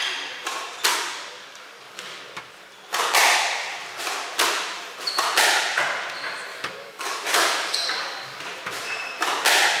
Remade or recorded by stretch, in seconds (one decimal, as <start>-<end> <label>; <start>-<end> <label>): 0.0-0.9 recorded; 0.9-2.2 remade; 2.2-6.5 recorded; 6.5-8.4 remade; 8.4-9.8 recorded